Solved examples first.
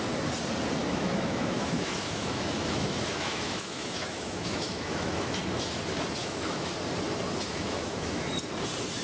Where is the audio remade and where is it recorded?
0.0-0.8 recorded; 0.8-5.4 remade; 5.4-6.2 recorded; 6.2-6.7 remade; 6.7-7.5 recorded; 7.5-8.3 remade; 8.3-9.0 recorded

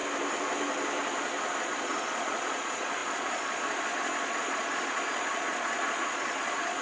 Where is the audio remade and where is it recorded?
0.0-1.6 recorded; 1.6-6.8 remade